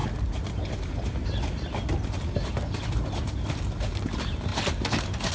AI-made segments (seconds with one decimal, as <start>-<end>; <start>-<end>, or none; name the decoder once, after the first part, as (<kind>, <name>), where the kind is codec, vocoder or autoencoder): none